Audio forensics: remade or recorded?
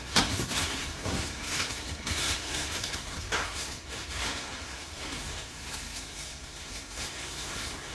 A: remade